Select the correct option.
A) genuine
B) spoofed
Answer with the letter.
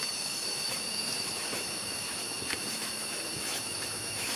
B